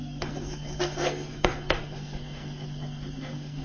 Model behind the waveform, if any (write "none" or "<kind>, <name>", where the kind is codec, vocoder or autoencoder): codec, SNAC